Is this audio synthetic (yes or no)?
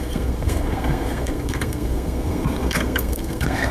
yes